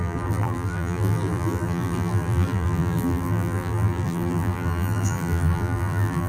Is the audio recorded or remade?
remade